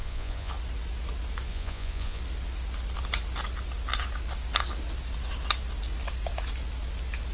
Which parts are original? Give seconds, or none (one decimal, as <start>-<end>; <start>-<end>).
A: 0.5-1.5; 2.2-7.3